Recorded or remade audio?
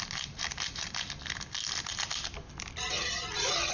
recorded